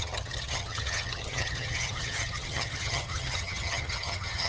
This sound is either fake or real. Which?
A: fake